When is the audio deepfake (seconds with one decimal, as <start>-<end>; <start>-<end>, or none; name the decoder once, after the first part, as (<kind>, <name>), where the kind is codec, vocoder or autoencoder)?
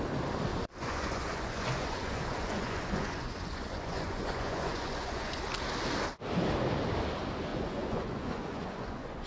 0.5-5.4 (vocoder, Vocos); 7.5-9.3